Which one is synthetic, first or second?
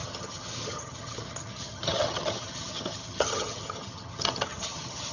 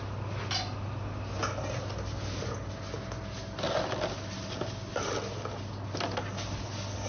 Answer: first